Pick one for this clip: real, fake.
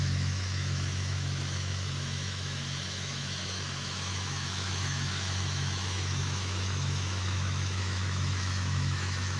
fake